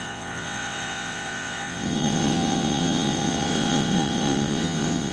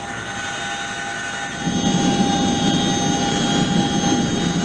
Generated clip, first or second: first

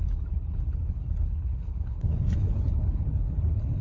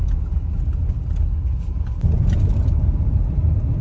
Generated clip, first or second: first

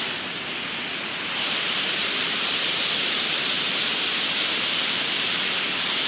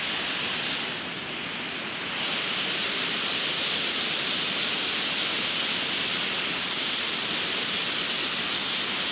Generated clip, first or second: first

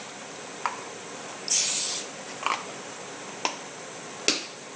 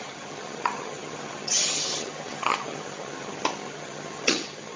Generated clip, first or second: second